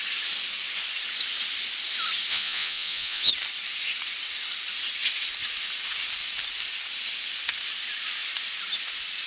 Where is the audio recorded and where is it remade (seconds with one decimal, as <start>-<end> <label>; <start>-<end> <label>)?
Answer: 0.0-2.3 recorded; 2.3-3.3 remade; 3.3-9.3 recorded